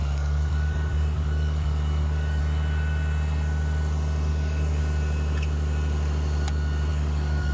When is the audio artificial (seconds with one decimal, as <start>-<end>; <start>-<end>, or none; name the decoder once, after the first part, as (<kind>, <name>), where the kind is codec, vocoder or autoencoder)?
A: 0.0-2.4 (codec, DAC); 4.3-4.8; 6.9-7.5